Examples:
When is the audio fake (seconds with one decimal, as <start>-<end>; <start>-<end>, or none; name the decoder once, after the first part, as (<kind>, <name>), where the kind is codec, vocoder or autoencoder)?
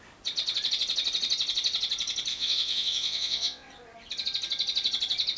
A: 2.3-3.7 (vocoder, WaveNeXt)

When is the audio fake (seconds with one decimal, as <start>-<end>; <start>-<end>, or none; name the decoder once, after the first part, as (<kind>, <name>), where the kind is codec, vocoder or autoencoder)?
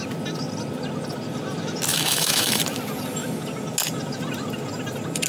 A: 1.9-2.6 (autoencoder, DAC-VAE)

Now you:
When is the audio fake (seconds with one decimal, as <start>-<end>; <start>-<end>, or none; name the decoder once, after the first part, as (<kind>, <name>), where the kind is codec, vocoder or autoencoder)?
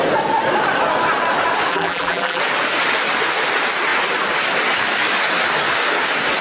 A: 1.7-2.4 (vocoder, BigVGAN v2)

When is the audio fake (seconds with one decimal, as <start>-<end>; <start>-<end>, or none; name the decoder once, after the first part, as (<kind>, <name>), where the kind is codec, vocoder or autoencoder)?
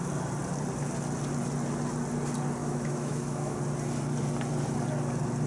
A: 2.6-3.6 (autoencoder, DAC-VAE)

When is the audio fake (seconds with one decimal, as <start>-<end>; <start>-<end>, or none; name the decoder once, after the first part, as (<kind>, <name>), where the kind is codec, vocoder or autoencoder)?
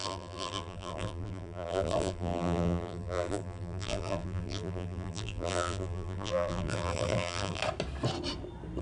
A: 0.0-7.6 (vocoder, BigVGAN v2)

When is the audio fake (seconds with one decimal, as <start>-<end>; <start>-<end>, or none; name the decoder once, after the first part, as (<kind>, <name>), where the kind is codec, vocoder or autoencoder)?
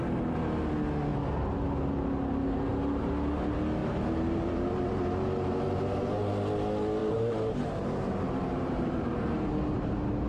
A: 3.8-5.0 (vocoder, BigVGAN v2); 7.0-9.5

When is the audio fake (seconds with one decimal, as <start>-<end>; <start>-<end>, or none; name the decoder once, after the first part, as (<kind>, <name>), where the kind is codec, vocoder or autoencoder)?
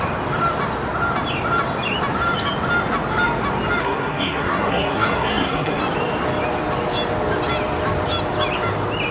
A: 3.8-5.8 (codec, SNAC)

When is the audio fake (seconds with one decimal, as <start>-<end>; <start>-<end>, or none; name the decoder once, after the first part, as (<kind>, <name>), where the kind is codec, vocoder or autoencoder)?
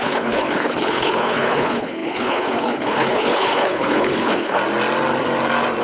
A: 0.0-4.6 (codec, HILCodec)